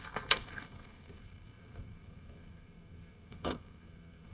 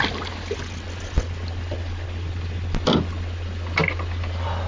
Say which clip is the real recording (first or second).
second